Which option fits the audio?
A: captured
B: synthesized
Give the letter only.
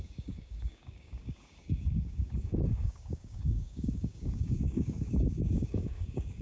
B